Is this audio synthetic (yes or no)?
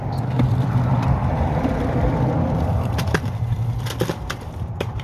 yes